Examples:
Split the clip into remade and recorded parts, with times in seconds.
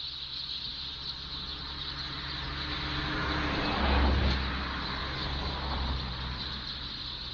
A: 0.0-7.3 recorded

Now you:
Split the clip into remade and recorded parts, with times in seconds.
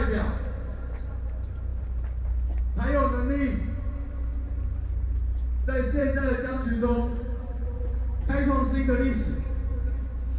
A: 0.0-6.0 recorded; 6.0-8.3 remade; 8.3-10.4 recorded